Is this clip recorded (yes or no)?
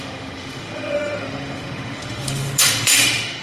no